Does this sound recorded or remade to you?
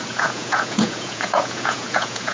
remade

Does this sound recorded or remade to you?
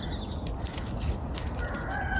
recorded